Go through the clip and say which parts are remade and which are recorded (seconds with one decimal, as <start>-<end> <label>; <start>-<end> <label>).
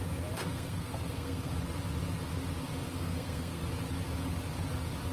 0.0-0.4 recorded; 0.4-1.5 remade; 1.5-2.9 recorded; 2.9-3.6 remade; 3.6-5.1 recorded